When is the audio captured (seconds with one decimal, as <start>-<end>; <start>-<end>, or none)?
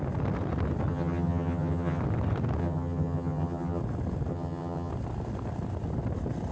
0.0-0.9; 2.0-2.6; 3.8-4.3; 4.9-6.5